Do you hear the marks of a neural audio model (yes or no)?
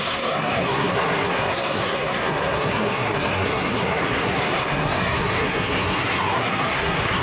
yes